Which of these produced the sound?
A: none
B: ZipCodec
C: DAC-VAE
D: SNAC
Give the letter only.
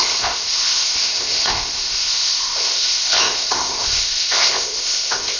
B